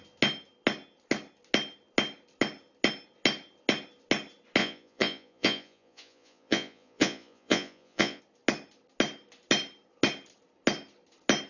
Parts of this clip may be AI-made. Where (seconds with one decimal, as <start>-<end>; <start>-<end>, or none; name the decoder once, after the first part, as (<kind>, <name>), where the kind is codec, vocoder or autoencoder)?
4.6-8.2 (vocoder, Vocos)